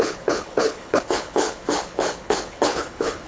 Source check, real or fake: fake